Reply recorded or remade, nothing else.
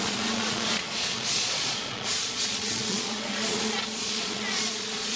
remade